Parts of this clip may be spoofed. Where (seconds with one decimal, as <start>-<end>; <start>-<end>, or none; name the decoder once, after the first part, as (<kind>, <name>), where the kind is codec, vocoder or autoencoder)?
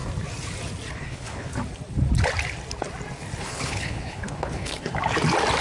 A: 0.9-1.5 (codec, HILCodec); 3.4-4.9